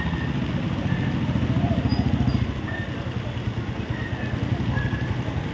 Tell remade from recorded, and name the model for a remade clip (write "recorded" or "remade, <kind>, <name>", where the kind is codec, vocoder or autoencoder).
recorded